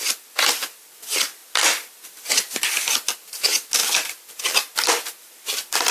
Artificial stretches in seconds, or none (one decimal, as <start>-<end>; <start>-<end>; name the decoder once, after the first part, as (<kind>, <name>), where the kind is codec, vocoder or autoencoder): none